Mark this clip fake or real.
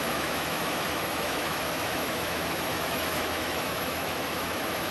fake